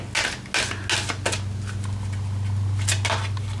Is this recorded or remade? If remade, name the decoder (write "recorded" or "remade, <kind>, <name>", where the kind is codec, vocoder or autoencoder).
recorded